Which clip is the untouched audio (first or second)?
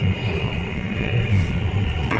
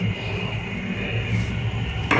second